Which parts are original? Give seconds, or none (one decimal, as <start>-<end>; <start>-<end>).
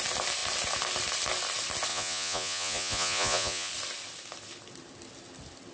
0.0-1.9; 3.7-5.7